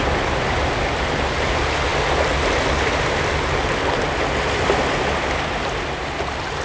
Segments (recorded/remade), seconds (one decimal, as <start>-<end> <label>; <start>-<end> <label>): 0.0-6.6 recorded